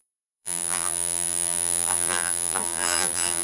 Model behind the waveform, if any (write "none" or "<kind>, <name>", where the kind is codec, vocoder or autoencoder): vocoder, BigVGAN v2